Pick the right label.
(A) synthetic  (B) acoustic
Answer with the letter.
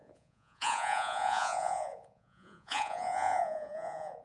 A